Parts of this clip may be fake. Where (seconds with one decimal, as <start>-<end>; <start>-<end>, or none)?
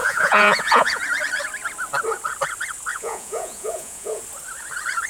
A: 0.0-1.0; 2.9-4.2